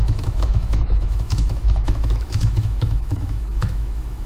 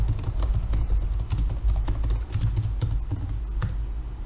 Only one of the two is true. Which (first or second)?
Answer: second